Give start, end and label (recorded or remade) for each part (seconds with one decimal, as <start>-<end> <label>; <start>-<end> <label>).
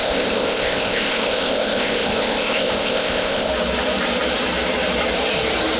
0.0-3.5 remade; 3.5-5.8 recorded